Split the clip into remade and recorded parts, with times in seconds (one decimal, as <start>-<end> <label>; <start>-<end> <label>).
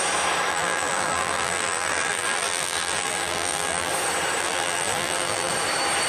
0.0-0.5 recorded; 0.5-3.9 remade; 3.9-4.4 recorded; 4.4-5.5 remade; 5.5-6.1 recorded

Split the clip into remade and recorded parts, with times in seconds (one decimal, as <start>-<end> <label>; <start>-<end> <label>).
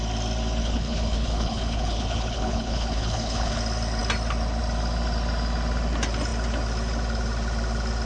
0.0-0.6 recorded; 0.6-3.6 remade; 3.6-8.1 recorded